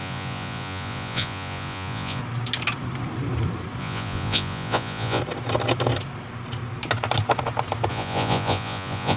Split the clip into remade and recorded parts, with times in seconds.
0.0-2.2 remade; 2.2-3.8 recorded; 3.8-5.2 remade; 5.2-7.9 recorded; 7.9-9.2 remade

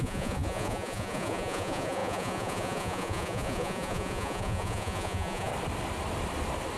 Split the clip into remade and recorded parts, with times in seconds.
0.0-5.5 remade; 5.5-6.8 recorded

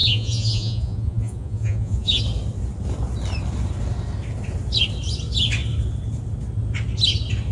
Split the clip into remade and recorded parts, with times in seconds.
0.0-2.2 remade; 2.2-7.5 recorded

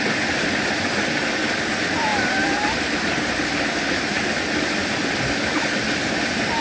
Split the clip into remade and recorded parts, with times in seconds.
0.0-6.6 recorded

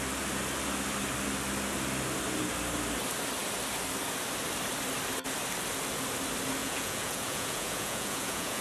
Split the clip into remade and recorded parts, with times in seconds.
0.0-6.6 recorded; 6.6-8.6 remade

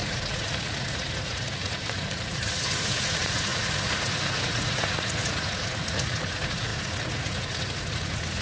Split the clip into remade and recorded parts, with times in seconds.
0.0-8.4 remade